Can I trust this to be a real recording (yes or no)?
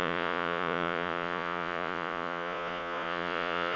no